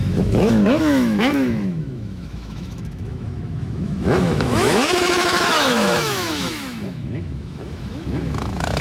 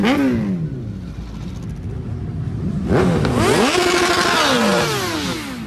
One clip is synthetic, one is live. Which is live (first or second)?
second